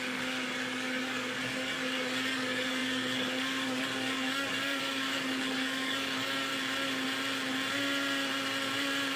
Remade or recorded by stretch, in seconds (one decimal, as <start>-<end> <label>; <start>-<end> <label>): 0.0-6.5 remade; 6.5-9.2 recorded

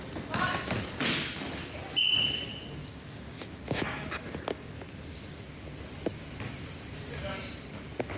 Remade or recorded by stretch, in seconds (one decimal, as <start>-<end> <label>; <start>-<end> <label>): 0.0-2.8 recorded; 2.8-4.7 remade; 4.7-8.2 recorded

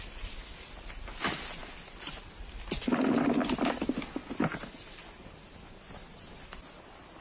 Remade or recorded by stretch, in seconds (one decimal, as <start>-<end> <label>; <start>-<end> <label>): 0.0-7.2 recorded

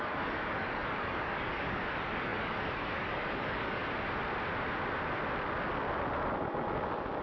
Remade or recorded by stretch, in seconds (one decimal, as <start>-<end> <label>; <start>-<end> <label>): 0.0-3.8 remade; 3.8-7.2 recorded

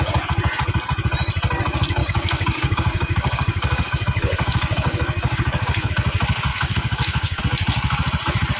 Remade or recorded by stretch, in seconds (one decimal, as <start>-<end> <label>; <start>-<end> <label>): 0.0-2.0 recorded; 2.0-5.9 remade; 5.9-6.5 recorded; 6.5-7.4 remade; 7.4-8.6 recorded

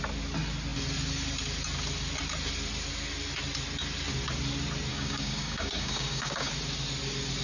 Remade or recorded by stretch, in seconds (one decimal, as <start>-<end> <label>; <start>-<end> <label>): 0.0-4.9 recorded; 4.9-6.5 remade; 6.5-7.4 recorded

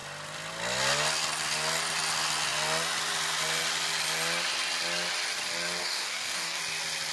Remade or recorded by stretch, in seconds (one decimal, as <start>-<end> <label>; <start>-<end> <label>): 0.0-5.8 recorded; 5.8-6.6 remade; 6.6-7.1 recorded